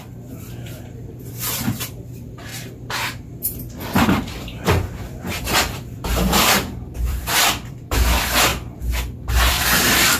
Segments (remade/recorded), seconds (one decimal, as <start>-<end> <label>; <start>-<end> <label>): 0.0-2.5 remade; 2.5-3.4 recorded; 3.4-8.5 remade; 8.5-9.5 recorded; 9.5-10.2 remade